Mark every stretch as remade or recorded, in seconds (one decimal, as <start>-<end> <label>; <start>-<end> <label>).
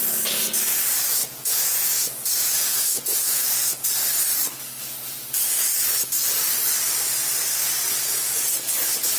0.0-1.2 recorded; 1.2-3.6 remade; 3.6-9.2 recorded